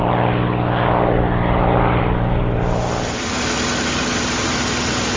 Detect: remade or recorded recorded